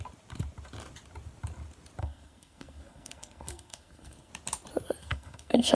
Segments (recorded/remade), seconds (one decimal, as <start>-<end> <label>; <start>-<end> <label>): 0.0-2.0 recorded; 2.0-4.3 remade; 4.3-5.0 recorded; 5.0-5.8 remade